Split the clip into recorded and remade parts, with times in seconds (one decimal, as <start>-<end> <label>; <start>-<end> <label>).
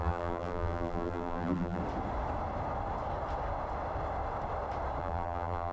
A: 0.0-1.8 remade; 1.8-5.0 recorded; 5.0-5.7 remade